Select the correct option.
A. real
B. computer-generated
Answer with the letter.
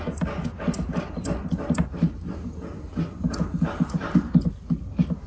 A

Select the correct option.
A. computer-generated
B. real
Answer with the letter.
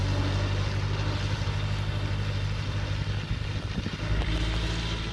B